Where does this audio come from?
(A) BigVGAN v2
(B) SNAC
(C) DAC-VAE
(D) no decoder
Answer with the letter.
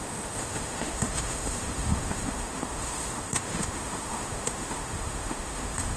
C